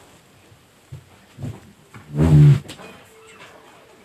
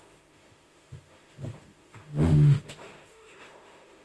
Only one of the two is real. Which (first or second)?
first